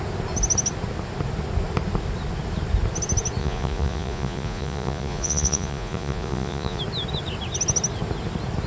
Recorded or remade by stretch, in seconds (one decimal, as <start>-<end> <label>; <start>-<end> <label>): 0.0-3.4 recorded; 3.4-6.8 remade; 6.8-8.7 recorded